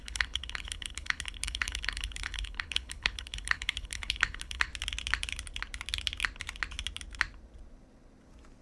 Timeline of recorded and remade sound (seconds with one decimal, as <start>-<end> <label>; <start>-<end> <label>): 0.0-4.7 remade; 4.7-8.6 recorded